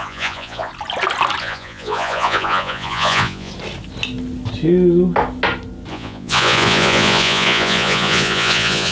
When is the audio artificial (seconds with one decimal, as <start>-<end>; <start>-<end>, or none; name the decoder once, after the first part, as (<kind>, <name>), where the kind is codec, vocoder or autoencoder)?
0.0-0.7 (vocoder, Vocos); 1.4-3.5; 5.9-8.9

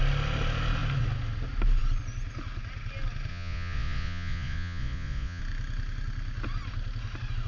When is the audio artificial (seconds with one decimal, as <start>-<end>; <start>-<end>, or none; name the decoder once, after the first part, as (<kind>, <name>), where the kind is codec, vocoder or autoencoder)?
3.3-5.4 (vocoder, Vocos)

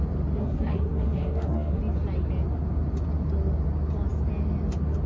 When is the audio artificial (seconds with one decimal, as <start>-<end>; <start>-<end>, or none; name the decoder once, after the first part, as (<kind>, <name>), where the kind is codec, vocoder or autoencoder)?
0.4-1.8 (codec, SNAC)

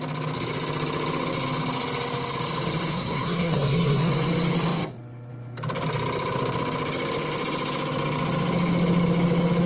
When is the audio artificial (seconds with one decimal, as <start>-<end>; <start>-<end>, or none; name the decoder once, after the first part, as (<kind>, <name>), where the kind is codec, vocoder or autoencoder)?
2.9-4.1 (codec, SNAC)